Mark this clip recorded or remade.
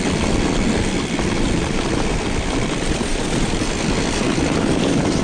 recorded